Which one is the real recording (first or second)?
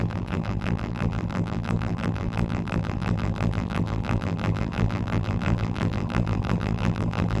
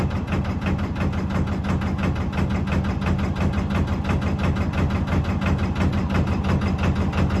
second